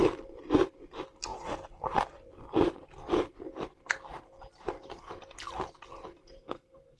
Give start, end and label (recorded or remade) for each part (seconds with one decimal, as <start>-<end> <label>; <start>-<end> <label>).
0.0-6.4 recorded; 6.4-7.0 remade